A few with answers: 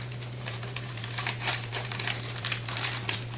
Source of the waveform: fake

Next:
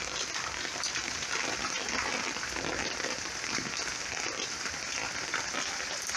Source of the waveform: real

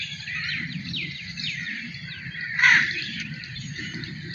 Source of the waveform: fake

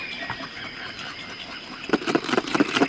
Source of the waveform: fake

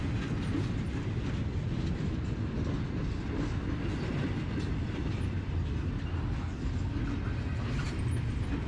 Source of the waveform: real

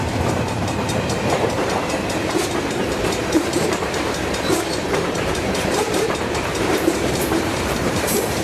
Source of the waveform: fake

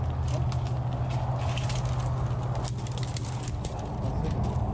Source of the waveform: real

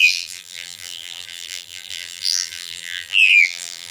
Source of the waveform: fake